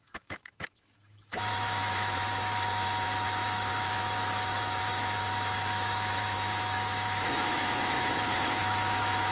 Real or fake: fake